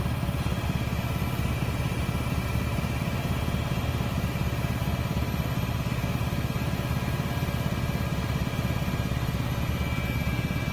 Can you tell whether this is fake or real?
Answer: real